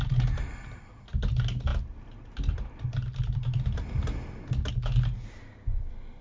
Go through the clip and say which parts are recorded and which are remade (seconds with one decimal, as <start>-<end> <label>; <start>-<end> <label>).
0.0-6.2 recorded